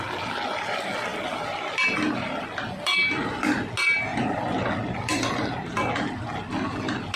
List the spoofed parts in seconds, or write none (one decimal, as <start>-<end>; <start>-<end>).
4.1-6.2